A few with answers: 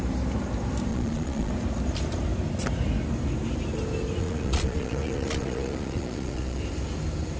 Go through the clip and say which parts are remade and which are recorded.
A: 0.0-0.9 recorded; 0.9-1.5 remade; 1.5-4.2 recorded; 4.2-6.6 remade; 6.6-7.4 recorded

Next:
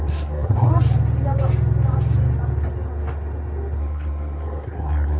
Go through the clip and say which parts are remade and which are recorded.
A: 0.0-0.7 remade; 0.7-3.8 recorded; 3.8-5.2 remade

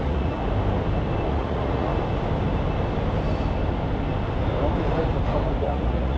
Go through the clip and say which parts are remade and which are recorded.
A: 0.0-0.4 remade; 0.4-1.3 recorded; 1.3-1.9 remade; 1.9-5.6 recorded; 5.6-6.2 remade

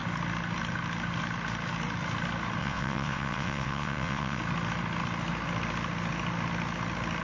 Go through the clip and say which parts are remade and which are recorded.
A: 0.0-2.6 recorded; 2.6-4.4 remade; 4.4-7.2 recorded